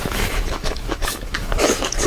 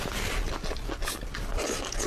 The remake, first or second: first